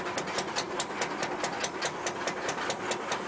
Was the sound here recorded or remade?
recorded